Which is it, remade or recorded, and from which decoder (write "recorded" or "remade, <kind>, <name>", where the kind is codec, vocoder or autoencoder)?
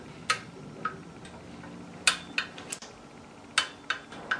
recorded